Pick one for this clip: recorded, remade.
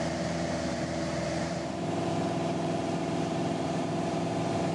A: remade